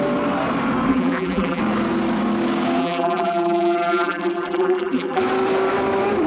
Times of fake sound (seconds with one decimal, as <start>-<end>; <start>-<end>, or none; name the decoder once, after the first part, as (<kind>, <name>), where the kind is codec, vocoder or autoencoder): 0.9-1.6 (vocoder, BigVGAN v2); 2.8-5.2

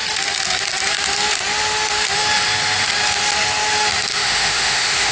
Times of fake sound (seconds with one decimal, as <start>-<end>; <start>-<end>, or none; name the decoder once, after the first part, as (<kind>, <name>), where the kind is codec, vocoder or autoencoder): 4.1-5.1 (autoencoder, DAC-VAE)

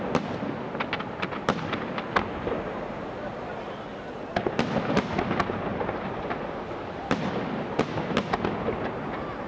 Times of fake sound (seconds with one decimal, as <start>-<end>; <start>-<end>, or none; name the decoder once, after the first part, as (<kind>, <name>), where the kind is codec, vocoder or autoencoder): 5.7-6.5 (vocoder, BigVGAN v2)

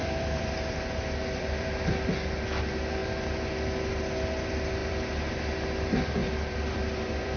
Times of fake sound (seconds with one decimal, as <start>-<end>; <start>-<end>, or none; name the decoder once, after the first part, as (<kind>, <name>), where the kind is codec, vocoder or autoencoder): 0.0-1.9 (vocoder, BigVGAN v2); 4.8-5.3; 6.2-7.4

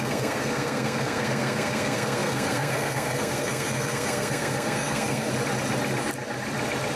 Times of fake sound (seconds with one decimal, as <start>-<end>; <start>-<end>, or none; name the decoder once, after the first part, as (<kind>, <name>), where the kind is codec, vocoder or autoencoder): 0.0-5.3 (codec, SNAC)